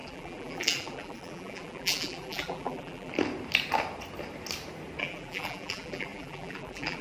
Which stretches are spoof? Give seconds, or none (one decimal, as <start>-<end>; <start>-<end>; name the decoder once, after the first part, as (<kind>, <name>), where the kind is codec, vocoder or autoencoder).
0.0-3.1 (vocoder, BigVGAN v2); 5.0-7.0